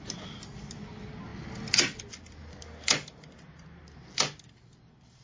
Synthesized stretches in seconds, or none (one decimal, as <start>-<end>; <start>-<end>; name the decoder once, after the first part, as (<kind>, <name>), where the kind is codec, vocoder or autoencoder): none